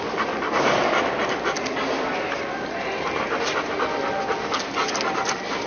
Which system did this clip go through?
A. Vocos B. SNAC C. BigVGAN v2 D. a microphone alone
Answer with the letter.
D